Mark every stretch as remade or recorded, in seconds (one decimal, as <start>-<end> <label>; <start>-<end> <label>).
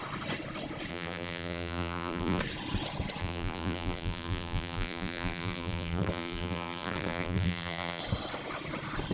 0.0-0.9 recorded; 0.9-2.4 remade; 2.4-3.2 recorded; 3.2-8.0 remade; 8.0-9.1 recorded